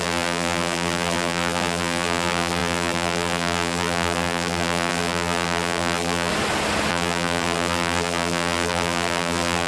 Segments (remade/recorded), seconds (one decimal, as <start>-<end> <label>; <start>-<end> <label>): 0.0-6.3 remade; 6.3-6.9 recorded; 6.9-9.7 remade